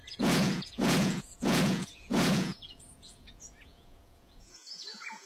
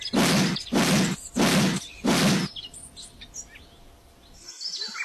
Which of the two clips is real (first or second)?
second